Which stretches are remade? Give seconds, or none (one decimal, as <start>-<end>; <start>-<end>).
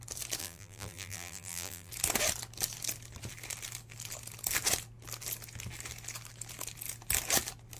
0.4-1.9